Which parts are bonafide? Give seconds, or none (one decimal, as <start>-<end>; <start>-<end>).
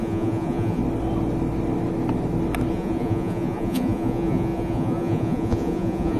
0.8-2.7